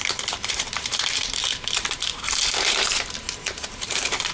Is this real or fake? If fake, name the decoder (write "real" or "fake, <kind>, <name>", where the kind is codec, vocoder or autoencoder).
fake, vocoder, BigVGAN v2